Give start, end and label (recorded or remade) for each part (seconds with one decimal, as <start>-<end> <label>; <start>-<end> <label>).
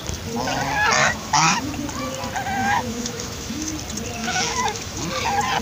0.0-1.0 recorded; 1.0-1.7 remade; 1.7-2.6 recorded; 2.6-3.7 remade; 3.7-4.2 recorded; 4.2-5.0 remade; 5.0-5.6 recorded